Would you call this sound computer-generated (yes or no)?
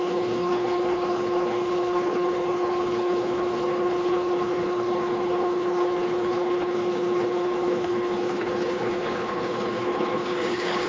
yes